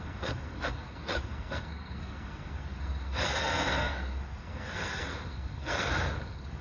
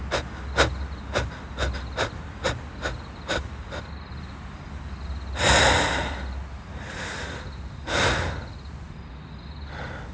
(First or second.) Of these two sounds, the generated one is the first